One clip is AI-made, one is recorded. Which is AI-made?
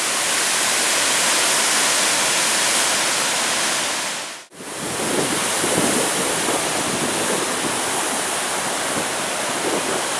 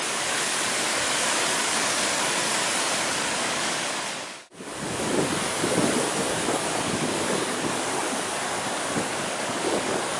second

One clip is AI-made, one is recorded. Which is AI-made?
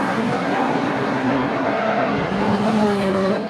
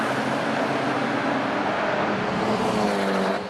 first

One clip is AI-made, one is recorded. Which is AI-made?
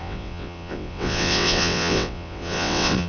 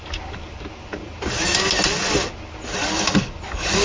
first